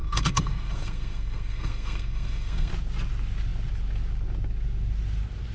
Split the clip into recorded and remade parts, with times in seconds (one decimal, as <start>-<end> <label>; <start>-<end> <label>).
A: 0.0-2.7 remade; 2.7-5.5 recorded